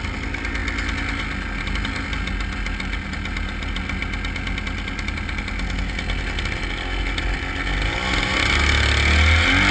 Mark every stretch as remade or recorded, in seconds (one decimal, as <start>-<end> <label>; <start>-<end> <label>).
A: 0.0-9.7 recorded